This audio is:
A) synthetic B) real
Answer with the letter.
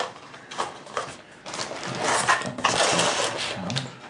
B